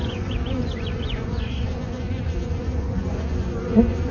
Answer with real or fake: fake